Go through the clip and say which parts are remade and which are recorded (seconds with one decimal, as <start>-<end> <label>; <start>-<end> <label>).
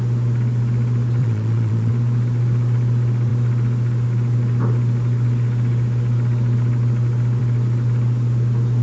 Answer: 0.0-1.2 recorded; 1.2-1.9 remade; 1.9-8.8 recorded